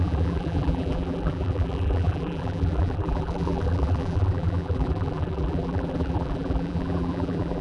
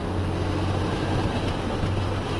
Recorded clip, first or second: second